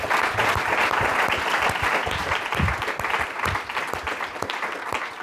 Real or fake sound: real